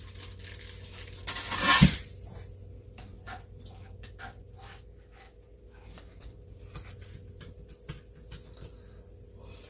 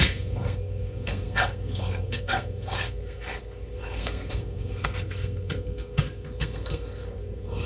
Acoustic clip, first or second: first